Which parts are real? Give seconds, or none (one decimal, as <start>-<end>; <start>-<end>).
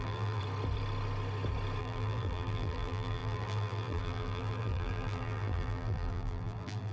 0.4-1.8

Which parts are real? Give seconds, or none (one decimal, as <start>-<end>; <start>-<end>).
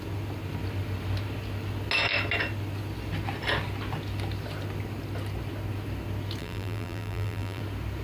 0.0-6.4; 7.6-8.0